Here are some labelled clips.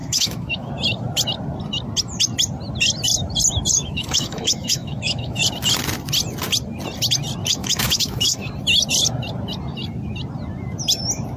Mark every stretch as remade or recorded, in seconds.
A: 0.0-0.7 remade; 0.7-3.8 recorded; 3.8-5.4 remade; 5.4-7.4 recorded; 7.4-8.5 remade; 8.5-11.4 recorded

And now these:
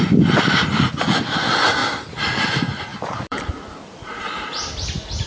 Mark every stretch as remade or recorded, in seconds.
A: 0.0-2.9 recorded; 2.9-3.5 remade; 3.5-5.3 recorded

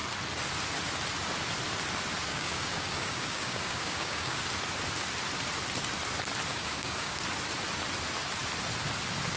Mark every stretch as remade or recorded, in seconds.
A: 0.0-2.3 recorded; 2.3-4.4 remade; 4.4-6.5 recorded; 6.5-7.2 remade; 7.2-9.4 recorded

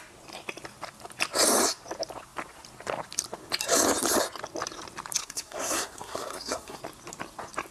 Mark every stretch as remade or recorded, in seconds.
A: 0.0-5.2 recorded; 5.2-6.8 remade; 6.8-7.7 recorded

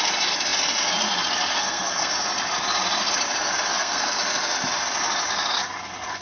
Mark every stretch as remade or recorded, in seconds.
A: 0.0-1.5 recorded; 1.5-2.1 remade; 2.1-3.7 recorded; 3.7-4.2 remade; 4.2-6.2 recorded